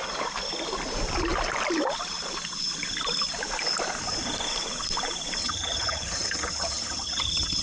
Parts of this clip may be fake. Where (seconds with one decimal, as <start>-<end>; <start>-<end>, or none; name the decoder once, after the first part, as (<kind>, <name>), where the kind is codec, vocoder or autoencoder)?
5.4-7.6 (vocoder, HiFi-GAN)